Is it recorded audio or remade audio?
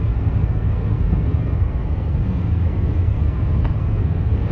remade